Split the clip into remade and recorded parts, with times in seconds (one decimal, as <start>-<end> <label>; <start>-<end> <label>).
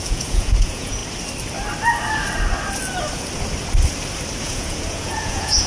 0.0-1.0 remade; 1.0-4.4 recorded; 4.4-5.7 remade